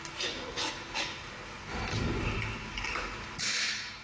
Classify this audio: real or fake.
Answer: real